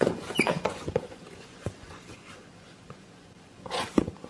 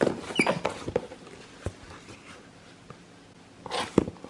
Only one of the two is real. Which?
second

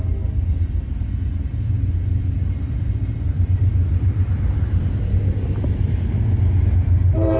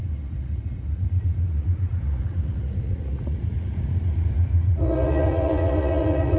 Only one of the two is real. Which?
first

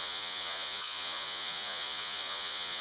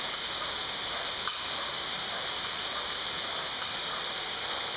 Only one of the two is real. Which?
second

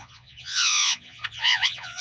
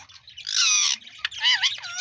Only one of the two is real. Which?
second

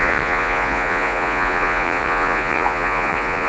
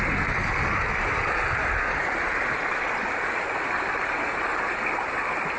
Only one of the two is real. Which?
second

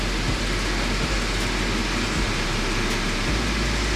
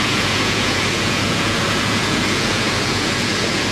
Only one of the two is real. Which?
first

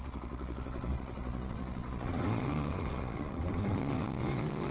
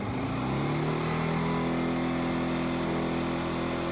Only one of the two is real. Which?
second